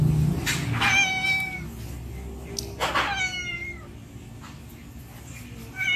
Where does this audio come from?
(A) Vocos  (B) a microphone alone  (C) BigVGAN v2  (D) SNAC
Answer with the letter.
B